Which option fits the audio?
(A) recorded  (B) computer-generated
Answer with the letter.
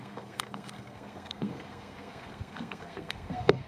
B